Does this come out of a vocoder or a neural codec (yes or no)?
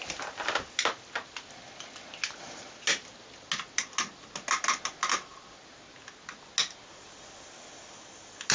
no